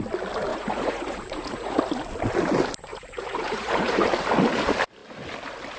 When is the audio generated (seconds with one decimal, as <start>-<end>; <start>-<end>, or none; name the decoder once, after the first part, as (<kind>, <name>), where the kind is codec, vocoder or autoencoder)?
0.5-1.8 (vocoder, Vocos); 2.9-4.0